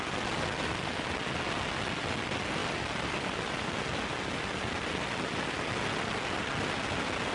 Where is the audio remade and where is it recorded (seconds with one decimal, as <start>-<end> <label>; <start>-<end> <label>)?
0.0-7.3 recorded